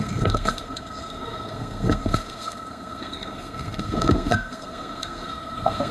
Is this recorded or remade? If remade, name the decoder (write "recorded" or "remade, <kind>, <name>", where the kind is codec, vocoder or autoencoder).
remade, codec, SNAC